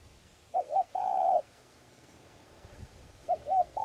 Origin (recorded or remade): remade